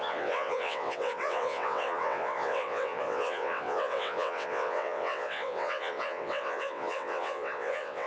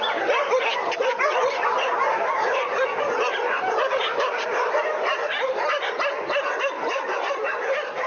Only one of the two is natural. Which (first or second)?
second